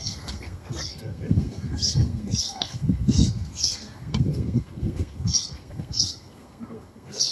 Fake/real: fake